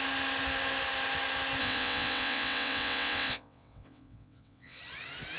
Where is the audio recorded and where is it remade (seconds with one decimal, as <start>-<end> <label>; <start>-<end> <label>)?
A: 0.0-1.6 recorded; 1.6-4.8 remade; 4.8-5.4 recorded